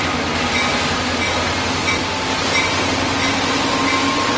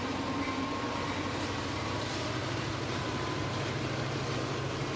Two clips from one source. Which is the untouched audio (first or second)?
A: first